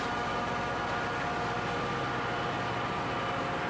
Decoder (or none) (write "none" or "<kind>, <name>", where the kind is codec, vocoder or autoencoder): none